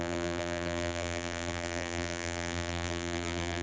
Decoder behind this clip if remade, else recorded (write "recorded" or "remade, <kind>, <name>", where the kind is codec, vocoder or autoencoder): remade, vocoder, BigVGAN v2